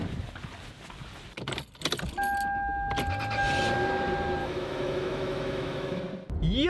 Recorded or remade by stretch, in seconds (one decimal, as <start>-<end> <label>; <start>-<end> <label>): 0.0-4.4 recorded; 4.4-6.0 remade; 6.0-6.7 recorded